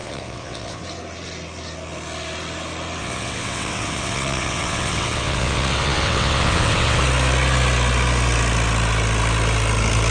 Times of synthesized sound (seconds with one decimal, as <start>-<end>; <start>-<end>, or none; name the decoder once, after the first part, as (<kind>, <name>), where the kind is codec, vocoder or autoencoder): 0.0-0.8 (vocoder, WaveNeXt); 3.0-7.0